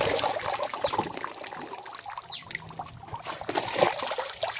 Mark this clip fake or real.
real